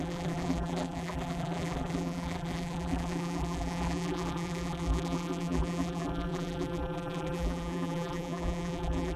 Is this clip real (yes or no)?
no